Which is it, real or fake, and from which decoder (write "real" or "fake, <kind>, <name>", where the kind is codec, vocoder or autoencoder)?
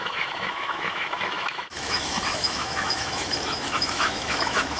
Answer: fake, autoencoder, DAC-VAE